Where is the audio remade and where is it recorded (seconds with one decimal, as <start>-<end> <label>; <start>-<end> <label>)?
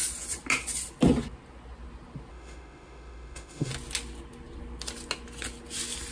0.0-2.3 recorded; 2.3-3.7 remade; 3.7-6.1 recorded